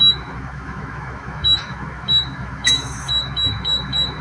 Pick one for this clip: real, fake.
fake